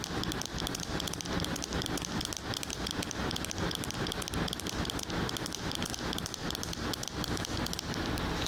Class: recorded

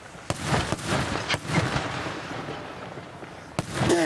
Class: recorded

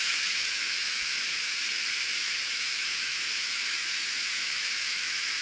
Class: remade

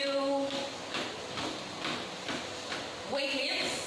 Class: recorded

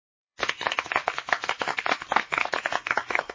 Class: remade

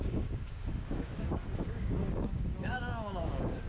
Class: remade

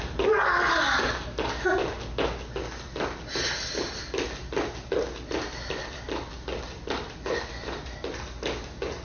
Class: recorded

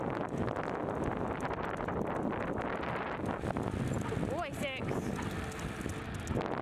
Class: recorded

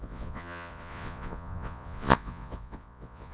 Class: remade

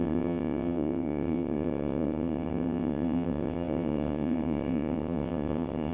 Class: remade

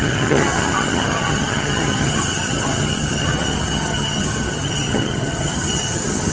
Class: remade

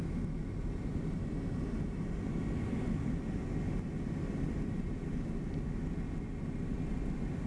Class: recorded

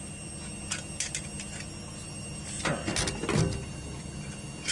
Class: recorded